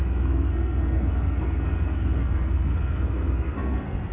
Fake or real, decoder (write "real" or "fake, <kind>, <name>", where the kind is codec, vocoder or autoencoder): fake, codec, SNAC